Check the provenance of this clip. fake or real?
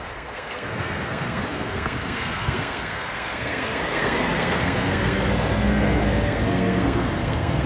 fake